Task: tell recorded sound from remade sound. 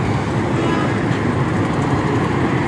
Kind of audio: recorded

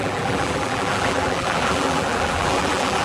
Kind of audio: remade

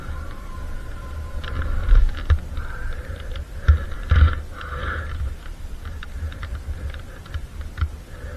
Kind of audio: recorded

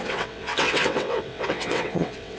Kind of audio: remade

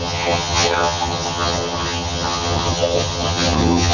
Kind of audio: remade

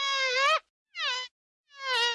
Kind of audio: recorded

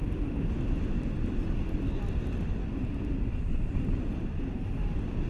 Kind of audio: recorded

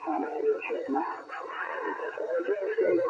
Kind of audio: remade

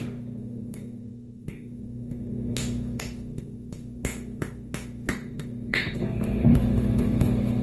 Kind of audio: remade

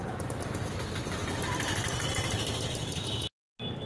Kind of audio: recorded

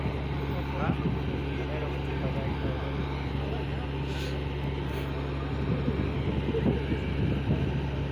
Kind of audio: recorded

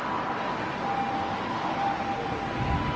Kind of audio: recorded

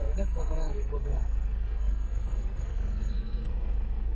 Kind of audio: remade